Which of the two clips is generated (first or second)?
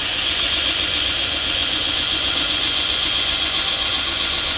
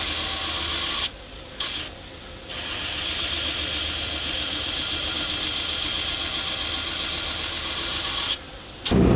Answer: first